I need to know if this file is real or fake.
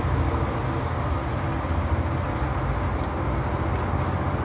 real